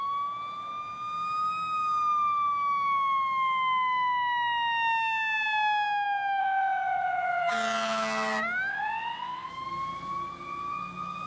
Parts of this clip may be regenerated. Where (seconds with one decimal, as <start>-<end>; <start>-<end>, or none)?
6.4-7.5; 8.7-9.5

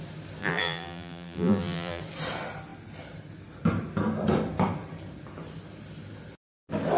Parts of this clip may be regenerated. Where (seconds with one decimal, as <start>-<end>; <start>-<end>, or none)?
0.4-2.0

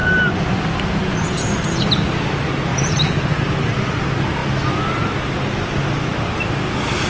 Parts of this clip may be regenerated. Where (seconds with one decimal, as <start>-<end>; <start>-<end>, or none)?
2.7-3.5

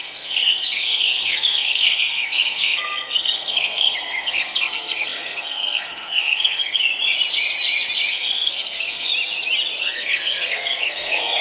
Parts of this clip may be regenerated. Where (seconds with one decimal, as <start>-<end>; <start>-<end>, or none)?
0.0-6.8; 8.1-9.1; 9.8-11.4

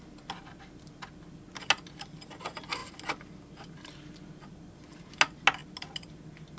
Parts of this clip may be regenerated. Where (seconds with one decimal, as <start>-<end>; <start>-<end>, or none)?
none

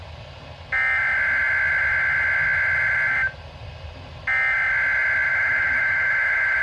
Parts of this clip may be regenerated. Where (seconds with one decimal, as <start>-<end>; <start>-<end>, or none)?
5.3-6.6

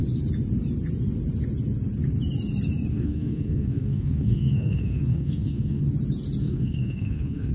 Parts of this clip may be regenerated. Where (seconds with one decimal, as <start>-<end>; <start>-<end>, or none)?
2.9-5.8; 6.4-7.5

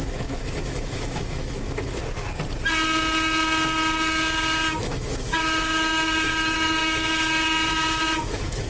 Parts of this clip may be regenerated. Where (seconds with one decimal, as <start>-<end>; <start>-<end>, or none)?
0.0-2.0; 4.8-8.7